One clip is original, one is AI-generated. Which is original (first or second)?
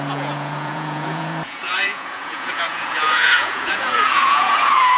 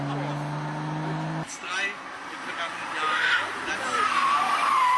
second